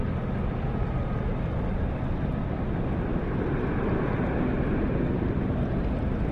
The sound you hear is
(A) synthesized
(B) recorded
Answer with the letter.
B